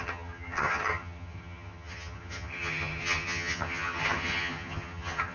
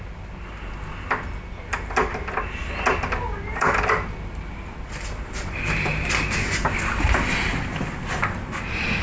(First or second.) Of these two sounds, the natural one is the second